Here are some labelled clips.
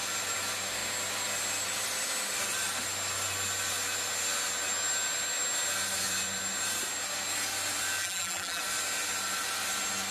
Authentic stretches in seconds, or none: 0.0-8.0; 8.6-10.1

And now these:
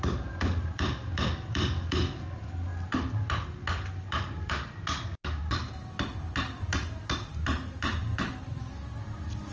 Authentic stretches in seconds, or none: 0.0-9.5

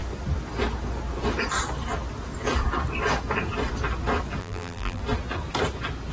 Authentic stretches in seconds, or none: 0.0-4.4; 5.0-6.1